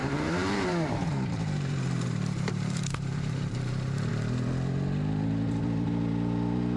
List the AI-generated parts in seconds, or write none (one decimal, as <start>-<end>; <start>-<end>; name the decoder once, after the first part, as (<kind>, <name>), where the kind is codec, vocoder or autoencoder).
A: 0.0-4.1 (vocoder, BigVGAN v2)